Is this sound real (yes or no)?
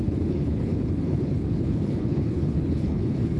no